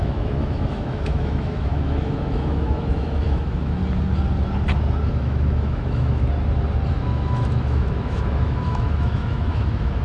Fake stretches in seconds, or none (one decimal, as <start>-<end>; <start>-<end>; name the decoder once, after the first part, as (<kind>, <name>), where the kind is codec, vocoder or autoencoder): 0.0-3.8 (autoencoder, DAC-VAE); 5.1-6.2; 6.9-10.0